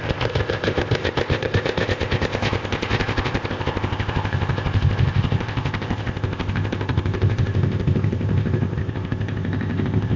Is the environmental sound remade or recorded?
remade